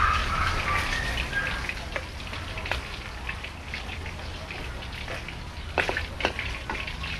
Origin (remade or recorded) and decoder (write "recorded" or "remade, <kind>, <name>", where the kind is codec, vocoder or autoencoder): recorded